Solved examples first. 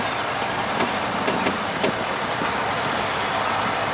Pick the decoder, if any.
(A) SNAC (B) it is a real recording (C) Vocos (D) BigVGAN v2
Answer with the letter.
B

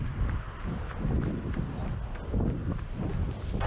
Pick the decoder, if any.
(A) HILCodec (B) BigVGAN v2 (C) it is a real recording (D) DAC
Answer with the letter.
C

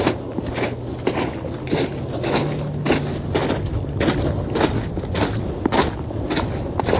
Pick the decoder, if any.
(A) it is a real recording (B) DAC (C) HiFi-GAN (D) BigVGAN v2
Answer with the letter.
A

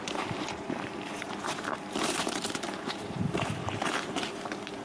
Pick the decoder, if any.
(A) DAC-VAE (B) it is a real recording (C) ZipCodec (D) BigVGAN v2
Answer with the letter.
D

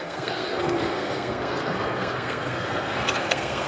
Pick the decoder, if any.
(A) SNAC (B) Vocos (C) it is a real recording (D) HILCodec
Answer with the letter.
A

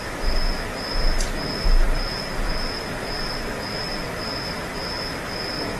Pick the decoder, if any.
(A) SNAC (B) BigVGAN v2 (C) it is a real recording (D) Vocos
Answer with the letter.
B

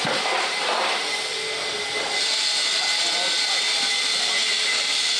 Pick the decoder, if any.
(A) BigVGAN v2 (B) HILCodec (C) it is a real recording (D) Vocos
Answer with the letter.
A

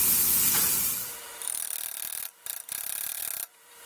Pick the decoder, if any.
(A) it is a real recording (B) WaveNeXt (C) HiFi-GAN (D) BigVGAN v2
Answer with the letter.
D